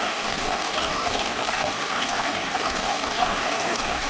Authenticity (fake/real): fake